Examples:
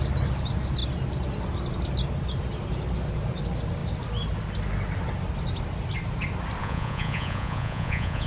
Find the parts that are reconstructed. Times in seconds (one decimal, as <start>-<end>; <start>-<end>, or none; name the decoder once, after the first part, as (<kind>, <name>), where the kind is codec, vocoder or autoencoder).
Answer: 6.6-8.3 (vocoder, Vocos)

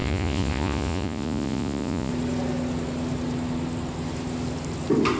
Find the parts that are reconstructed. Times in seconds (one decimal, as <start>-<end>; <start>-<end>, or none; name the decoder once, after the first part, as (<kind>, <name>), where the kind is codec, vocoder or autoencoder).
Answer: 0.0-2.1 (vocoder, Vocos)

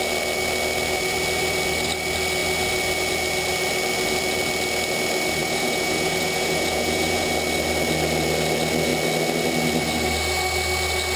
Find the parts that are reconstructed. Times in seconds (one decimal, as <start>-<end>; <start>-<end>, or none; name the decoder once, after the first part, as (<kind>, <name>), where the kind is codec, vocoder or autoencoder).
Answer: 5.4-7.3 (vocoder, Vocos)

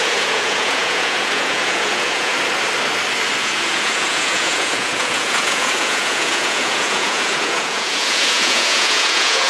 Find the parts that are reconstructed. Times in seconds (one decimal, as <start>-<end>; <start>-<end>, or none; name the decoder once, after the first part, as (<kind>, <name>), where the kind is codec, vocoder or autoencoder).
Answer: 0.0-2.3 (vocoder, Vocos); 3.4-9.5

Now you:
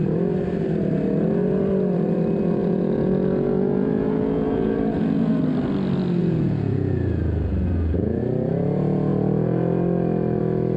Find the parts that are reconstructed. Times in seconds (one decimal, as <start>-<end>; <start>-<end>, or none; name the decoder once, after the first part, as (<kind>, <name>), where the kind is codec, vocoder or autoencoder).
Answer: 2.6-5.4 (vocoder, Vocos); 6.2-8.2